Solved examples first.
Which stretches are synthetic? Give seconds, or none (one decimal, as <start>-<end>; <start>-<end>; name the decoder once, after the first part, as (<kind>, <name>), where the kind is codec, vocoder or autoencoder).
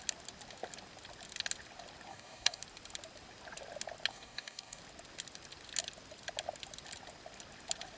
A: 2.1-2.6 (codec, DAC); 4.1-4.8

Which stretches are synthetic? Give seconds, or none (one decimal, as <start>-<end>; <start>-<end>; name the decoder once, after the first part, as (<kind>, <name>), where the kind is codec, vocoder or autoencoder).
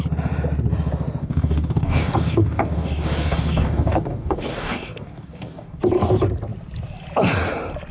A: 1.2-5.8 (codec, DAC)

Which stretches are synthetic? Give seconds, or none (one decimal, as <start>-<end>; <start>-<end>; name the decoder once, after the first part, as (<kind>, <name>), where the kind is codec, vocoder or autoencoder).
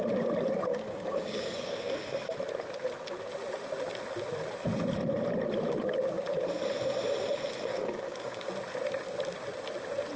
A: 0.7-1.9 (codec, DAC); 7.7-8.5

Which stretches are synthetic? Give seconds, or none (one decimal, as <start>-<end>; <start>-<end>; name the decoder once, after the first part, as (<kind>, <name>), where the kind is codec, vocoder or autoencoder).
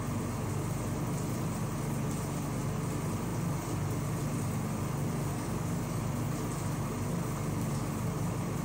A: 5.3-6.0 (codec, DAC)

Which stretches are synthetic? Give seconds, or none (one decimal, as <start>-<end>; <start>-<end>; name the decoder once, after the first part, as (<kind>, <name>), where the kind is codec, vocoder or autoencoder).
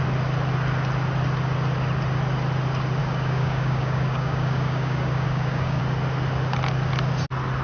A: 3.0-5.8 (codec, DAC)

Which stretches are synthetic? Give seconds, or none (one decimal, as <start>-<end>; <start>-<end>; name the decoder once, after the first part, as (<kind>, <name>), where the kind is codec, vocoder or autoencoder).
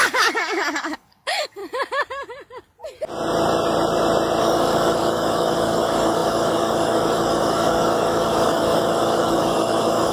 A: 0.0-1.6 (codec, DAC); 4.4-10.1